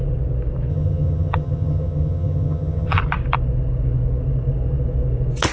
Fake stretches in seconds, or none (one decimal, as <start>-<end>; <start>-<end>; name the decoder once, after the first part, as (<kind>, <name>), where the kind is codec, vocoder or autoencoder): 0.7-3.0 (vocoder, HiFi-GAN)